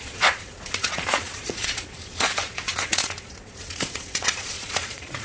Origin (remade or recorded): remade